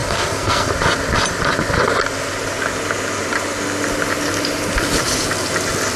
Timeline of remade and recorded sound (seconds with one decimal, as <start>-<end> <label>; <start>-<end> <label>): 0.0-0.7 remade; 0.7-6.0 recorded